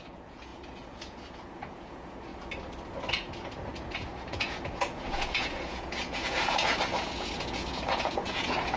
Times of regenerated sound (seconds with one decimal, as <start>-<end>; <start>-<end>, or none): 0.0-2.3; 3.1-8.8